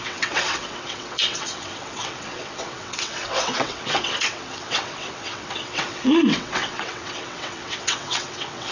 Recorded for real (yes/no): no